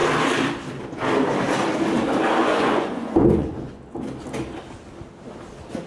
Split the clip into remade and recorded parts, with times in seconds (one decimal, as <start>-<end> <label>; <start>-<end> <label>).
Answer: 0.0-2.4 recorded; 2.4-3.8 remade; 3.8-5.9 recorded